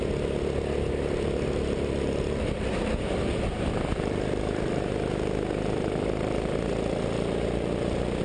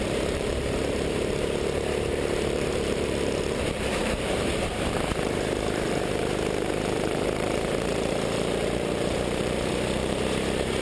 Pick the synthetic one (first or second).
second